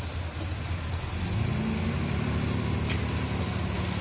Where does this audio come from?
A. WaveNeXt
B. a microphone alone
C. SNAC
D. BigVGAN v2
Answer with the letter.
B